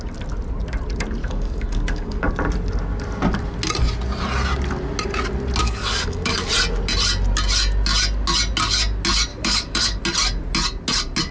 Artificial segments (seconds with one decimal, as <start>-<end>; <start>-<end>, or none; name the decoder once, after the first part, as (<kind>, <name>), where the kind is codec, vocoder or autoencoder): 1.2-2.3 (codec, DAC); 5.6-6.5; 9.3-10.0